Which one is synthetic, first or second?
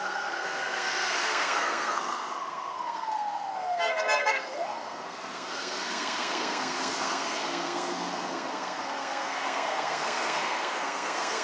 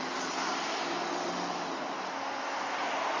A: first